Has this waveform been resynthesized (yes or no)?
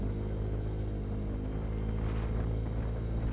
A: no